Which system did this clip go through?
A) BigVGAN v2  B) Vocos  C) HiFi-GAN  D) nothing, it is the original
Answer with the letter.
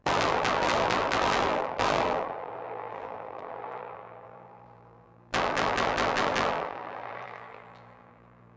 A